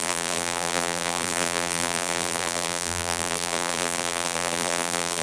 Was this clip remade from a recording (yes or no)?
yes